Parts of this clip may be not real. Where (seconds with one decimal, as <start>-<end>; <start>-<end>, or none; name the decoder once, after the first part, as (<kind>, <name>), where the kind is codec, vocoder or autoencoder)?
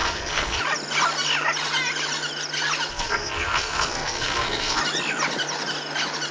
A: 0.0-0.6 (codec, SNAC); 2.9-4.8